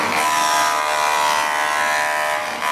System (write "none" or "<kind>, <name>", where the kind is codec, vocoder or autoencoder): none